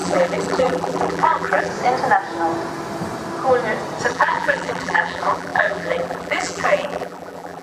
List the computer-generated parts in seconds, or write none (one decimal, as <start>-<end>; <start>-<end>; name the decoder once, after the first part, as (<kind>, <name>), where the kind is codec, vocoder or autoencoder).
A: 0.0-1.7 (vocoder, BigVGAN v2); 4.1-7.6